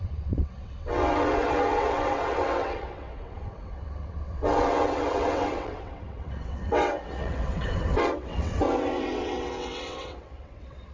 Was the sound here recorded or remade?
remade